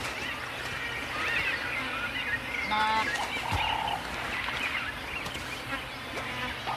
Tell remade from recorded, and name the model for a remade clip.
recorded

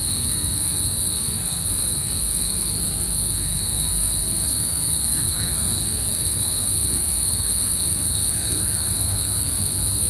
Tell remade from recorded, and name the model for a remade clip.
remade, codec, SNAC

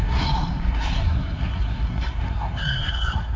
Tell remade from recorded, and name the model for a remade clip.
remade, codec, SNAC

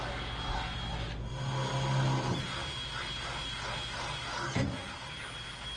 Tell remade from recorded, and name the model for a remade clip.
recorded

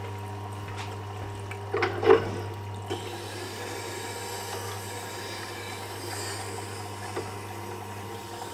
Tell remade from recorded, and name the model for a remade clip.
recorded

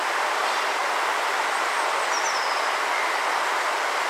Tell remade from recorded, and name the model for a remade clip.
recorded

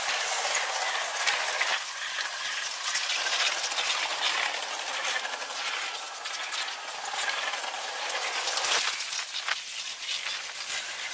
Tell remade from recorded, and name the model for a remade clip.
recorded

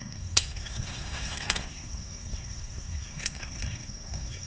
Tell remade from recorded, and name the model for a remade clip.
remade, codec, SNAC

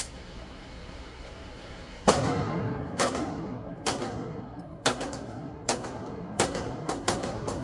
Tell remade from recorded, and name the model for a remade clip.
remade, codec, SNAC